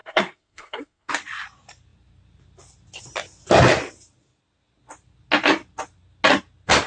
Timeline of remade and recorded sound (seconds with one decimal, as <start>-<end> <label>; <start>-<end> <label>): 0.0-1.1 remade; 1.1-6.9 recorded